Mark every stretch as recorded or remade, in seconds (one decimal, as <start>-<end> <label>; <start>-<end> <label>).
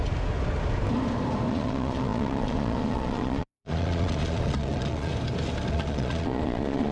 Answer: 0.0-1.5 recorded; 1.5-5.1 remade; 5.1-5.7 recorded; 5.7-6.9 remade